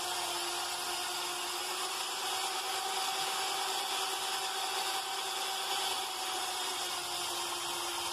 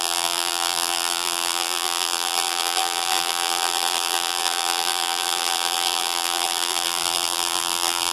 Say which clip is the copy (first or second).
second